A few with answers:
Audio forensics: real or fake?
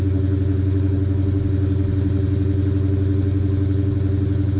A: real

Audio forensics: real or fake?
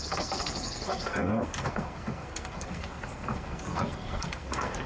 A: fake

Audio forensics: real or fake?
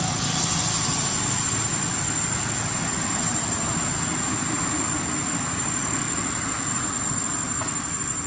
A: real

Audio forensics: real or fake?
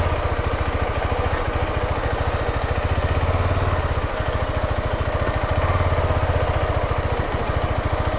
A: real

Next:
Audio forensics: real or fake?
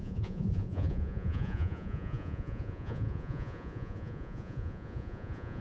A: fake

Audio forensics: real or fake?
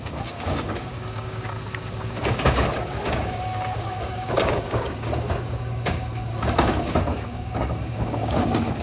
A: fake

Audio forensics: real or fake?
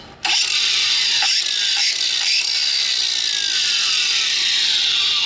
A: real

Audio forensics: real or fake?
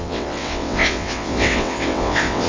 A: fake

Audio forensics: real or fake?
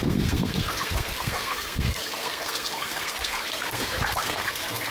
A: fake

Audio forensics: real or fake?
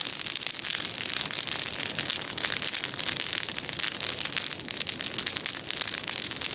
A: real